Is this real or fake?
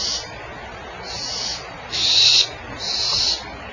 fake